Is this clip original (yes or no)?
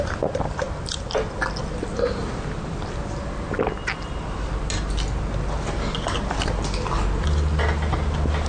yes